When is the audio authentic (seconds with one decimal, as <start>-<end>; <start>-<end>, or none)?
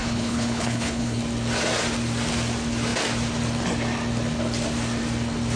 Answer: 1.2-5.6